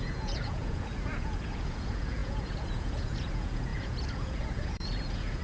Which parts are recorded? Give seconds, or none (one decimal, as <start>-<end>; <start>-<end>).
none